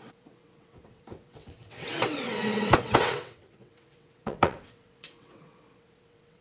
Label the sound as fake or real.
fake